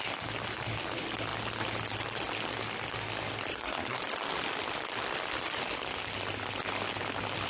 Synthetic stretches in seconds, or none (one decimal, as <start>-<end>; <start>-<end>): 3.5-4.0